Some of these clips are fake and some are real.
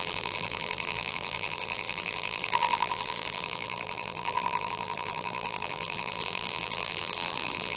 fake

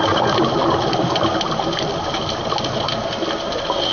real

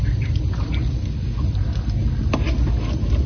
real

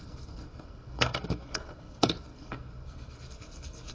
fake